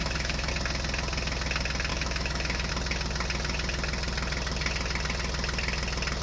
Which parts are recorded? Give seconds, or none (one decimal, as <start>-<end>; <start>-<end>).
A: 0.5-1.9; 2.7-6.2